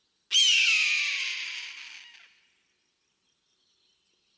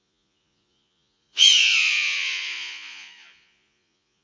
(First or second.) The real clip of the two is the first